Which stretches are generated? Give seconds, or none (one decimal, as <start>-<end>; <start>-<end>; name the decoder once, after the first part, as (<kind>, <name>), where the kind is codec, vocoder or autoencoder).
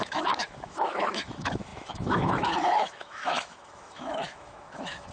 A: 0.0-5.1 (autoencoder, DAC-VAE)